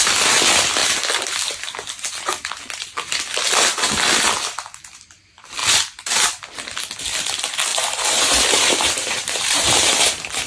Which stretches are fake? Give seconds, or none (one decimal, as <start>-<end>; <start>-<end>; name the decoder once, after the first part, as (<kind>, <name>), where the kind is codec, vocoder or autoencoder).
5.6-6.3 (vocoder, BigVGAN v2); 7.7-10.5

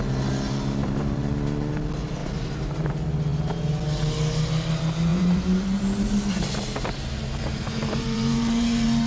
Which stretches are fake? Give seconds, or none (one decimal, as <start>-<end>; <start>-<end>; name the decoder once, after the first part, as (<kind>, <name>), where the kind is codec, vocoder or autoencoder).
0.8-1.8 (vocoder, BigVGAN v2); 2.2-2.9; 5.1-9.1